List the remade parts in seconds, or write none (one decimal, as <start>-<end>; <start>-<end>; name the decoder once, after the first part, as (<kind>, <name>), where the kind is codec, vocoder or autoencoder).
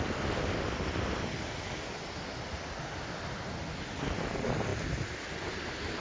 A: none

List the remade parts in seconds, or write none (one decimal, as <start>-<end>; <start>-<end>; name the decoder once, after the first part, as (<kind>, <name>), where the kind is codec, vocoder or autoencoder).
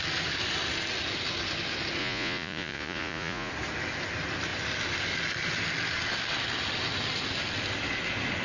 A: 2.0-3.5 (vocoder, Vocos)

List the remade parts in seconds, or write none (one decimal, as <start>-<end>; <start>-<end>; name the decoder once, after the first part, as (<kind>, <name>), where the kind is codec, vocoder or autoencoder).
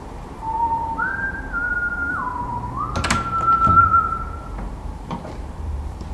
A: 0.0-1.6 (vocoder, BigVGAN v2); 2.1-6.1